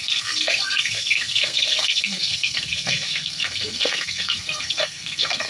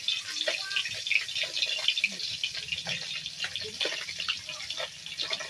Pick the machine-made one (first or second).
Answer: first